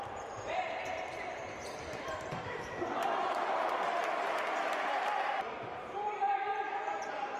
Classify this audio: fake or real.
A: fake